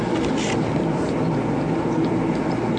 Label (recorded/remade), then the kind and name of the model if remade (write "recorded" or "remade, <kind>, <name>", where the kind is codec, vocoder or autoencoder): recorded